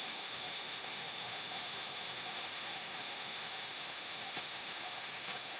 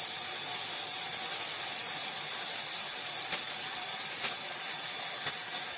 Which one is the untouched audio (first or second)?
second